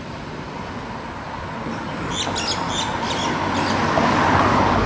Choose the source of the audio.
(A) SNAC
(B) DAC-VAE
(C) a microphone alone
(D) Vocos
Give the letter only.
C